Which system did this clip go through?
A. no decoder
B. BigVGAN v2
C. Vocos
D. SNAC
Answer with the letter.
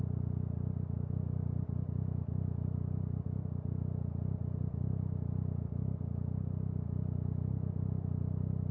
A